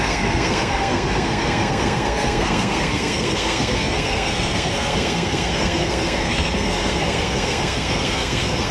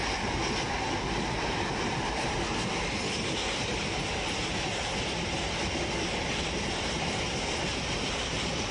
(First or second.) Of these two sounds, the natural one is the second